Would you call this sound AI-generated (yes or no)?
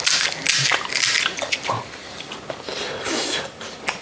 no